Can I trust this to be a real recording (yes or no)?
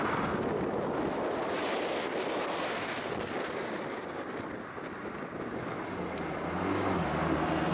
yes